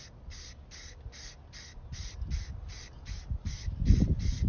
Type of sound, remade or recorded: recorded